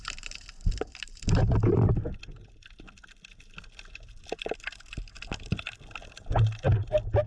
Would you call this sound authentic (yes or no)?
yes